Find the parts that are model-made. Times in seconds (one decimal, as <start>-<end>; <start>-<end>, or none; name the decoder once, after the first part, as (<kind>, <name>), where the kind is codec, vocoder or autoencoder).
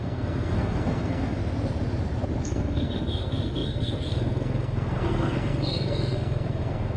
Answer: 0.0-1.4 (codec, SNAC); 2.4-7.0